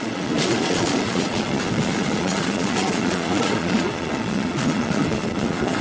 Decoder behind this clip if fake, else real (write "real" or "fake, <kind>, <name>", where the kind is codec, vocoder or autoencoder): fake, vocoder, Vocos